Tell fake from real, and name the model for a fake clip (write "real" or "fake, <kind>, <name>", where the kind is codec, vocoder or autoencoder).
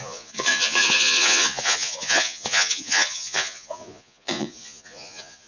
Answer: fake, vocoder, Vocos